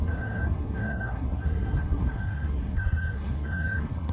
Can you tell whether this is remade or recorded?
remade